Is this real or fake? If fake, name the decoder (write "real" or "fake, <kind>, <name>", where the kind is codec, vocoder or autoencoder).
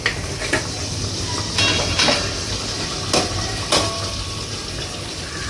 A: real